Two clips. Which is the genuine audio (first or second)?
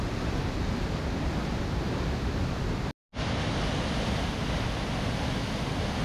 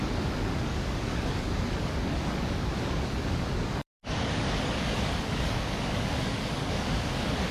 first